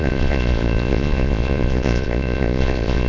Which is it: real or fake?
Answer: fake